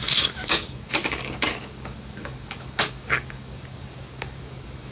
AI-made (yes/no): yes